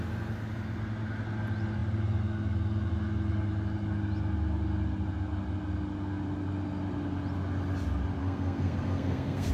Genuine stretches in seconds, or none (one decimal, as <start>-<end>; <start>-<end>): 0.0-8.2